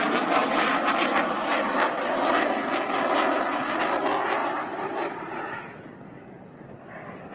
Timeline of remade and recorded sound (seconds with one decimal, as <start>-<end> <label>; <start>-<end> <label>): 0.0-4.4 recorded; 4.4-5.8 remade; 5.8-7.3 recorded